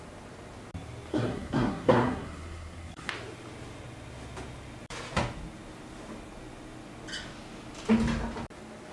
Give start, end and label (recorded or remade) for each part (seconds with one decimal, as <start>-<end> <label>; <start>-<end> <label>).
0.0-1.1 recorded; 1.1-3.1 remade; 3.1-8.9 recorded